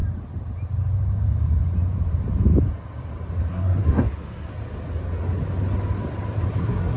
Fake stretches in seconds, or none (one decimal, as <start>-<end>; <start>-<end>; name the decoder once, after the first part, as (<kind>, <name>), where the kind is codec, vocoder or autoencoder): 3.5-4.5 (codec, SNAC); 6.6-7.0